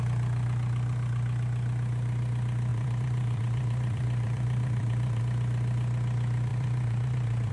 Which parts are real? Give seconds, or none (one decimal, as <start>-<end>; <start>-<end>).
0.0-2.7; 5.2-6.5